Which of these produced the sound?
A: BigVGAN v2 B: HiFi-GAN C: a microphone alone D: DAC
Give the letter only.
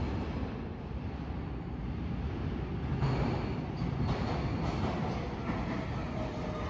C